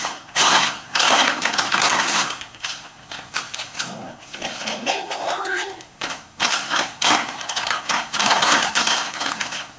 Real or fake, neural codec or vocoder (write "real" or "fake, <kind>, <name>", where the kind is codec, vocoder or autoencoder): fake, codec, SNAC